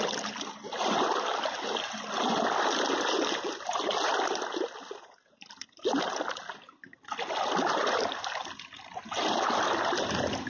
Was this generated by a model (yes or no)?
no